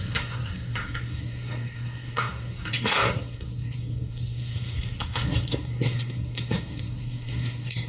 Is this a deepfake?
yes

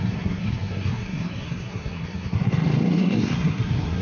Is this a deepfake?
yes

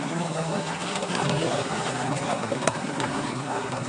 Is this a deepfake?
yes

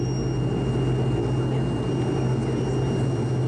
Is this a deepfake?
no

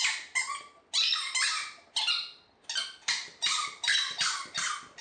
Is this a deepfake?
no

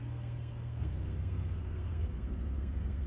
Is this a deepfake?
yes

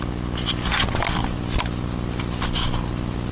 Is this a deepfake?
no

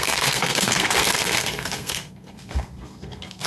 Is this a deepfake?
yes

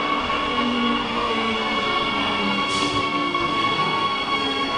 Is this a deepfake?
yes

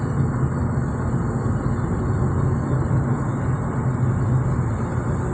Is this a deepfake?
no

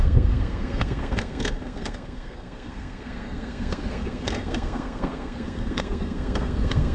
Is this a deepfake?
yes